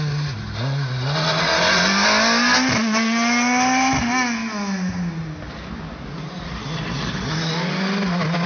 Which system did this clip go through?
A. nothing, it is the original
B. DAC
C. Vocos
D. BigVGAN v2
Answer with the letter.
A